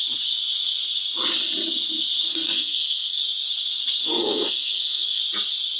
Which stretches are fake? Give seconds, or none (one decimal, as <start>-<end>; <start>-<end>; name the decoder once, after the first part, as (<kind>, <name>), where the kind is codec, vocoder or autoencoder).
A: 2.3-3.2 (codec, SNAC); 4.0-5.2